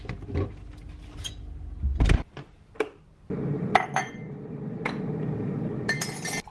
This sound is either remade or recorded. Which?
recorded